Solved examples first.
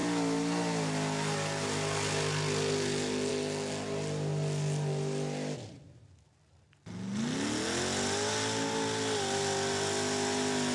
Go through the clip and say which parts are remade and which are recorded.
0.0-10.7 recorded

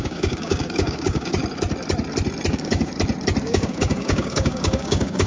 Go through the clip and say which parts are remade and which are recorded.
0.0-1.4 remade; 1.4-2.5 recorded; 2.5-2.9 remade; 2.9-3.4 recorded; 3.4-5.3 remade

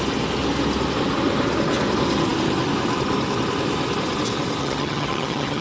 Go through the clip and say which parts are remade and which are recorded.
0.0-4.6 recorded; 4.6-5.6 remade

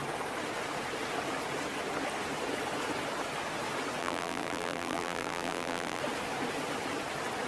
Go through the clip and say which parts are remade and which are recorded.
0.0-4.0 recorded; 4.0-6.0 remade; 6.0-7.5 recorded

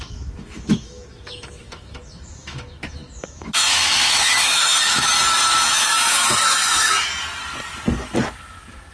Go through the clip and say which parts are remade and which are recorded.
0.0-5.1 remade; 5.1-5.7 recorded; 5.7-7.1 remade; 7.1-8.9 recorded

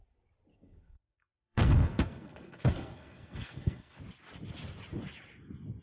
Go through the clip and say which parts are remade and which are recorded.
0.0-0.5 recorded; 0.5-4.0 remade; 4.0-5.8 recorded

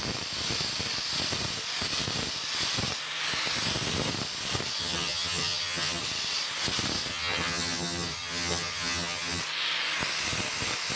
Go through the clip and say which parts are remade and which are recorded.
0.0-4.8 recorded; 4.8-6.0 remade; 6.0-7.1 recorded; 7.1-9.4 remade; 9.4-11.0 recorded